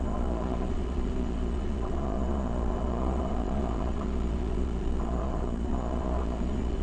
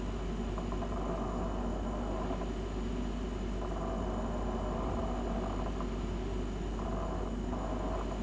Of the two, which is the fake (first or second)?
first